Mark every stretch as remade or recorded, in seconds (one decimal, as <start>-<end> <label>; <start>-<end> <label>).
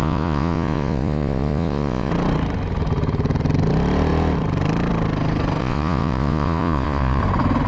0.0-2.1 remade; 2.1-5.6 recorded; 5.6-7.2 remade; 7.2-7.7 recorded